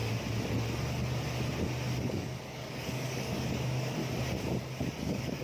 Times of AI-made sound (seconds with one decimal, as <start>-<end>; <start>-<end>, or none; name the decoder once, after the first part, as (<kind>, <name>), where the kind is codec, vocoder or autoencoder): 2.0-4.0 (codec, DAC); 5.0-5.4